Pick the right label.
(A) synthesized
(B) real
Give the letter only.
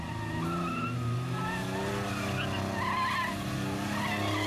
B